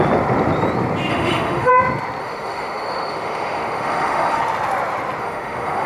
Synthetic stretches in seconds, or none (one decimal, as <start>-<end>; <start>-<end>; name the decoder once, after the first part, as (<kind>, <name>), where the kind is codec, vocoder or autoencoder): 1.1-1.7 (autoencoder, DAC-VAE); 2.2-4.4; 5.2-5.9